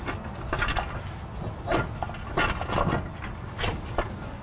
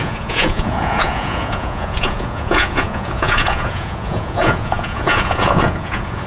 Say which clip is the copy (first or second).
second